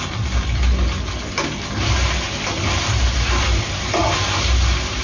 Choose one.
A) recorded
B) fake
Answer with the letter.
A